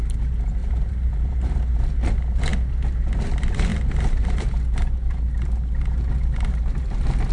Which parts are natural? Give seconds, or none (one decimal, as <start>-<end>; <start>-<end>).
0.0-0.6; 1.8-3.7; 4.4-7.3